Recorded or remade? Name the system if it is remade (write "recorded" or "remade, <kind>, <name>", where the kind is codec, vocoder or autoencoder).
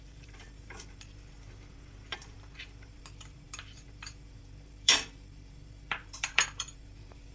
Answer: remade, vocoder, BigVGAN v2